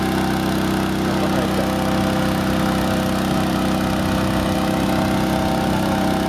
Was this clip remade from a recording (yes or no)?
no